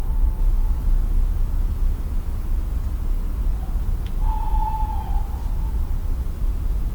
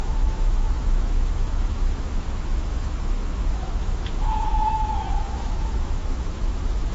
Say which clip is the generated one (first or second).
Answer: second